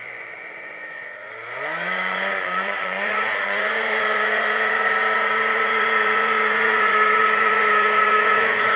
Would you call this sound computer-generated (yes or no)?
yes